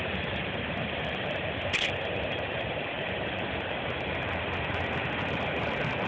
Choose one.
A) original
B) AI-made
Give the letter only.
B